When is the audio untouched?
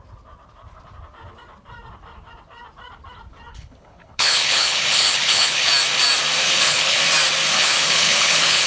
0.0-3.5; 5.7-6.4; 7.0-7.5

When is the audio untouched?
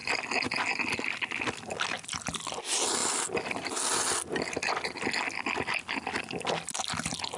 0.0-7.4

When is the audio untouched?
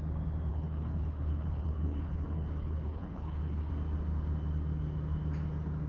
0.0-0.5; 3.7-5.9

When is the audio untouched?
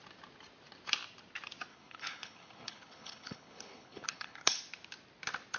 0.0-1.7; 4.6-5.6